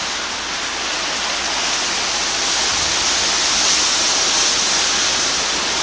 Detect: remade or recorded recorded